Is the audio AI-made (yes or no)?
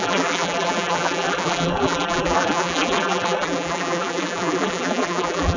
yes